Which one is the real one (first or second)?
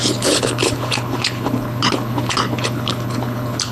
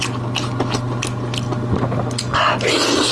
second